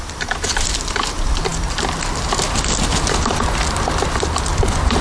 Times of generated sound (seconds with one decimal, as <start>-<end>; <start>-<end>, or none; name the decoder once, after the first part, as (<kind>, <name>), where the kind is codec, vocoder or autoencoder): none